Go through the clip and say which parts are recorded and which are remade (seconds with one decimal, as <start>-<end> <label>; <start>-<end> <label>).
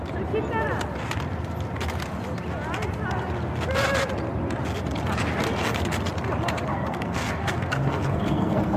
0.0-6.7 recorded; 6.7-8.8 remade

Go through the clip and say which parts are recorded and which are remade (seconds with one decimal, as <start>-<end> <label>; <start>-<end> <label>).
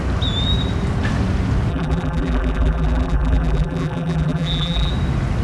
0.0-1.7 recorded; 1.7-4.9 remade; 4.9-5.4 recorded